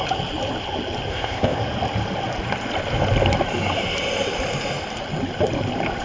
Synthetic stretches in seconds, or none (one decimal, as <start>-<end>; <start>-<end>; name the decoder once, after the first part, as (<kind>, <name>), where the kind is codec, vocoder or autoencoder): 1.1-1.6 (codec, ZipCodec)